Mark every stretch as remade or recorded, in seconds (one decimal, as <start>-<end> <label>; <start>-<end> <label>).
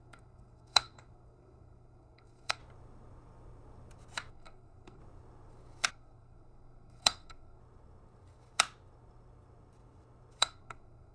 0.0-2.6 remade; 2.6-4.3 recorded; 4.3-5.0 remade; 5.0-5.9 recorded; 5.9-7.6 remade; 7.6-10.4 recorded; 10.4-11.1 remade